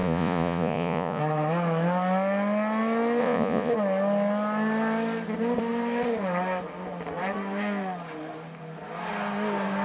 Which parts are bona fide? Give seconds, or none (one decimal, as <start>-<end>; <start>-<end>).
1.2-3.2; 3.7-9.8